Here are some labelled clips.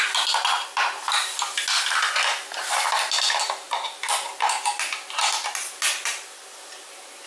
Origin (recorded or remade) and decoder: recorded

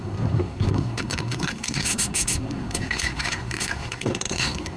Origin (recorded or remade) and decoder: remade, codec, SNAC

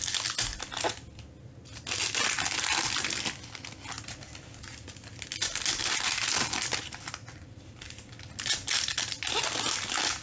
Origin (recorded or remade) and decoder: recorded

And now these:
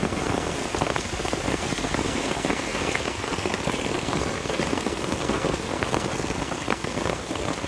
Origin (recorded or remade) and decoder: remade, codec, SNAC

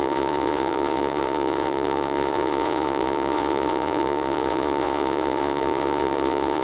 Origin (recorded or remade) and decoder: remade, vocoder, Vocos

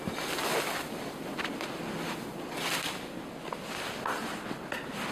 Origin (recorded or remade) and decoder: recorded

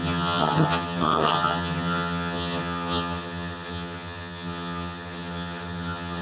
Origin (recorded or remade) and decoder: remade, vocoder, HiFi-GAN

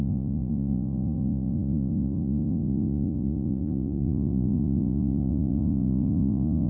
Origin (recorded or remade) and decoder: remade, vocoder, Vocos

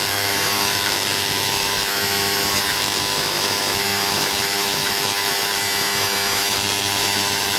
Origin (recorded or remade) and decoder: remade, autoencoder, DAC-VAE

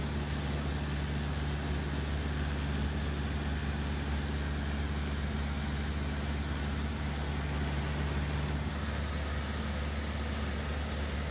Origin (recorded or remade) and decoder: recorded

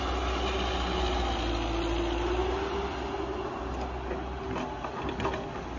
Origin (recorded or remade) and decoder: recorded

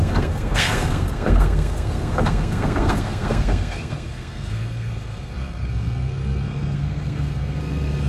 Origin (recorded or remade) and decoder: remade, codec, SNAC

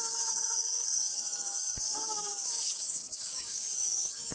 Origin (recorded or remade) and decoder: remade, codec, DAC